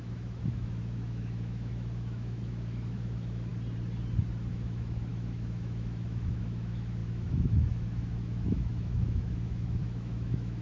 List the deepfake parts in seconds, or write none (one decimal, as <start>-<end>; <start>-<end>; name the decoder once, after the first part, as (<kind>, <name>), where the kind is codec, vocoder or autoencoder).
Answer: 0.0-3.5 (autoencoder, DAC-VAE); 4.5-10.6

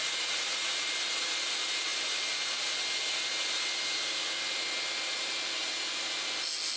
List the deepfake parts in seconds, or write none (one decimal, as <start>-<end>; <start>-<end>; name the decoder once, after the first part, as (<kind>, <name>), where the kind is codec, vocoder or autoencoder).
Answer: 0.0-0.9 (vocoder, Vocos)

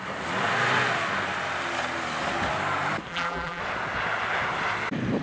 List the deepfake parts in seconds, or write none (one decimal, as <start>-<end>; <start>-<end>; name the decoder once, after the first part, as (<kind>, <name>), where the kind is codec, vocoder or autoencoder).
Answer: 3.1-3.6 (vocoder, BigVGAN v2)

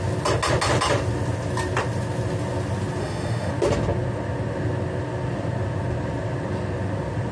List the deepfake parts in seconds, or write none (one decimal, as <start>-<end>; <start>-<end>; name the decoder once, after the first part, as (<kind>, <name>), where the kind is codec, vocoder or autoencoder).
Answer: 3.0-3.5 (autoencoder, DAC-VAE)

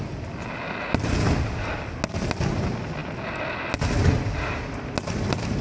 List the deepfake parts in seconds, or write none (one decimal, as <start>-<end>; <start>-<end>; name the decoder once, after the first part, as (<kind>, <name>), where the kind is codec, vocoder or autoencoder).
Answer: none

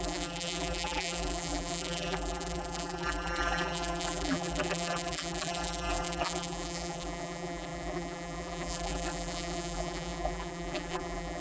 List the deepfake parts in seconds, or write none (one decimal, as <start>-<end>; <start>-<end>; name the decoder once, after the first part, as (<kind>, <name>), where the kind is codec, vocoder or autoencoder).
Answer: 0.0-11.4 (vocoder, BigVGAN v2)

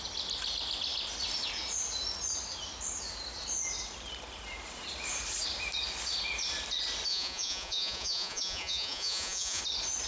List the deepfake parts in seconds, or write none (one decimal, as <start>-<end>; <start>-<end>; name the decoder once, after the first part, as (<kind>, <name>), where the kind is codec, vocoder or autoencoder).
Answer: 7.1-9.6 (vocoder, Vocos)

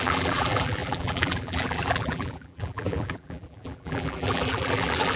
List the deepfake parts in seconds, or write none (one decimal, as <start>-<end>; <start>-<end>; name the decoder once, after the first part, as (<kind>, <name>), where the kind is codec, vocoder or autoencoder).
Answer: 0.0-5.2 (vocoder, BigVGAN v2)